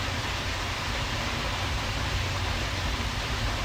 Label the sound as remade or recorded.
recorded